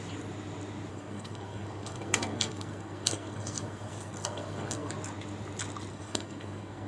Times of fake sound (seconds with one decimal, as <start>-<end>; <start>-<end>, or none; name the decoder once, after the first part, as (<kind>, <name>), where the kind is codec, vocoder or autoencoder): 0.9-4.9 (codec, SNAC); 5.9-6.9